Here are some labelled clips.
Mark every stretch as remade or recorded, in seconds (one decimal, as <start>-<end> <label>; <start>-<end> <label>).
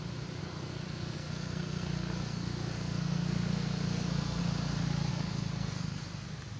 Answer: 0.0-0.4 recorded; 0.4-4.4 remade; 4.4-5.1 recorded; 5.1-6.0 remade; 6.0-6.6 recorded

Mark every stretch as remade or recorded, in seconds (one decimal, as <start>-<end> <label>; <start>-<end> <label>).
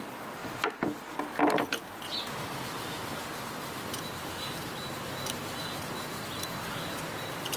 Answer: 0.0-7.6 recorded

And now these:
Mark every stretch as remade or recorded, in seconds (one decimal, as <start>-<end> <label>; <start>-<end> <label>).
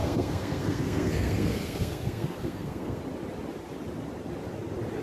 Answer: 0.0-3.0 remade; 3.0-5.0 recorded